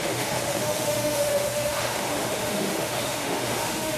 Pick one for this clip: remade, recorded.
remade